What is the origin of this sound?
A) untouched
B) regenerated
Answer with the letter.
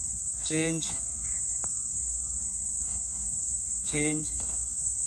B